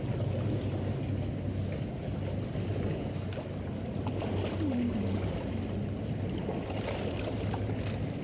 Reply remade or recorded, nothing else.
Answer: recorded